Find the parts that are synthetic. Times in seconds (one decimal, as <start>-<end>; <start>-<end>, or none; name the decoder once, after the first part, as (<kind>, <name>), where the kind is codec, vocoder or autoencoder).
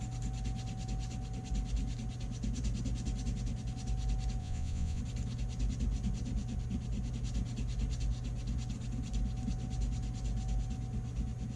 4.4-5.0 (vocoder, Vocos)